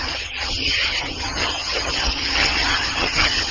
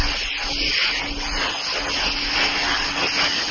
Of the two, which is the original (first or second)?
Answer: second